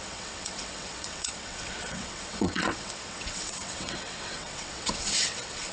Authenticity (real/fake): fake